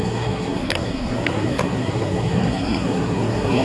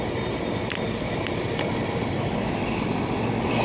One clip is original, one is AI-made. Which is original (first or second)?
second